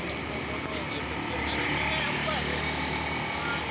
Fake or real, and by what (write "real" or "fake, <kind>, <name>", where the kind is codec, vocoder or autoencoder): real